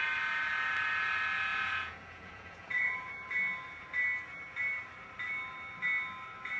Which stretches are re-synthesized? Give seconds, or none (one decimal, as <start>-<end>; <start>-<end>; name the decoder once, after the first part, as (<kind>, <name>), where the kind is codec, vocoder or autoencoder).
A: 1.5-3.1 (vocoder, Vocos)